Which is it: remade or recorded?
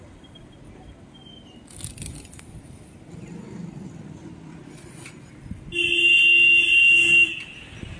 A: recorded